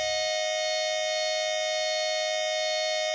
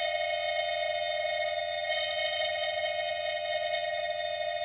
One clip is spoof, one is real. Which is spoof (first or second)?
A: second